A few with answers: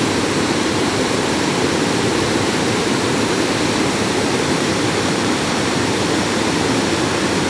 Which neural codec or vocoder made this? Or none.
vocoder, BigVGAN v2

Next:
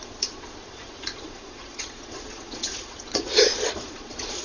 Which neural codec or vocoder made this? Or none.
vocoder, Vocos